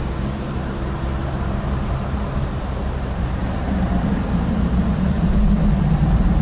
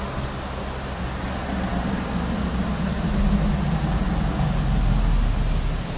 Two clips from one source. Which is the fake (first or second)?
first